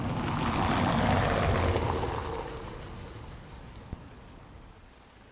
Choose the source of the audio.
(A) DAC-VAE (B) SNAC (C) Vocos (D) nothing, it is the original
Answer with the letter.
D